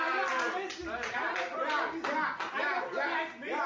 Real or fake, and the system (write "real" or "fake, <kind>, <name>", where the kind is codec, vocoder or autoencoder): real